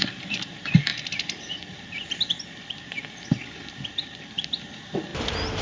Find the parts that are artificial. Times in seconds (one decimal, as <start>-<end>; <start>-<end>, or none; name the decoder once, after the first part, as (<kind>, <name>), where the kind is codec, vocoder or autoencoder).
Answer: none